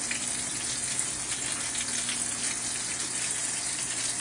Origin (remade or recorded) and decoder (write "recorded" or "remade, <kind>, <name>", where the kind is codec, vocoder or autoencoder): recorded